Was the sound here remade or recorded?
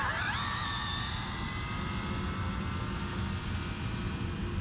recorded